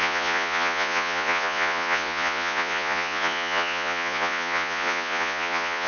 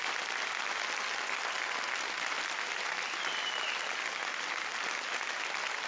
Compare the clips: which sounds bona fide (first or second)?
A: second